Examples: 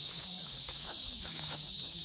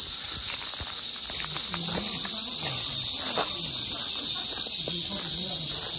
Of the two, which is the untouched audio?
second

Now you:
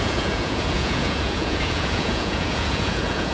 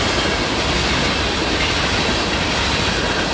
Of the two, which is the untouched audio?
second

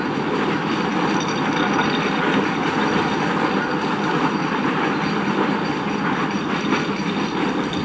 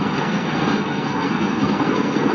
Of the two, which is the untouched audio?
first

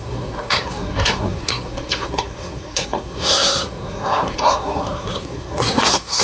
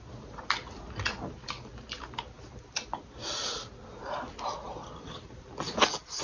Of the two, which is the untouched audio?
second